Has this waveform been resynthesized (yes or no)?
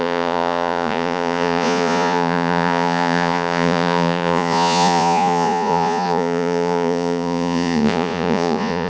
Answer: yes